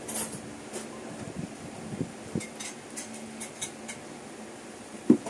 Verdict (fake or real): real